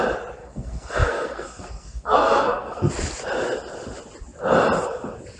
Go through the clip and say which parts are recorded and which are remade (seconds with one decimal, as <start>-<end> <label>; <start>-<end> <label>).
0.0-0.4 recorded; 0.4-2.9 remade; 2.9-5.4 recorded